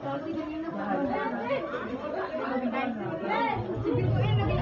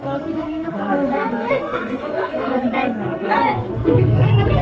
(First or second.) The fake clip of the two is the second